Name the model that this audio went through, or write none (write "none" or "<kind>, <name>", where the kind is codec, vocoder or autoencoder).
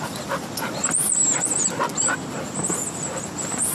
none